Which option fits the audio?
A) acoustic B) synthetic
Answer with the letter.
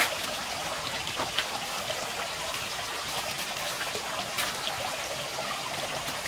A